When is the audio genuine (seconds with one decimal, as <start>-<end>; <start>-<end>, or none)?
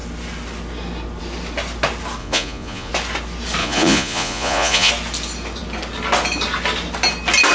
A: 0.0-2.2; 2.9-3.6; 4.9-7.5